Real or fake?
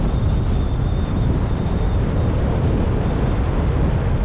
real